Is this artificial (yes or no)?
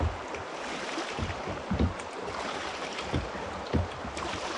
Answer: no